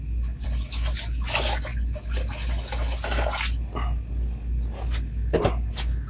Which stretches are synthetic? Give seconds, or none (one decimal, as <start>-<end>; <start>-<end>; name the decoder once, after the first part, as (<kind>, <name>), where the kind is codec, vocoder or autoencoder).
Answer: none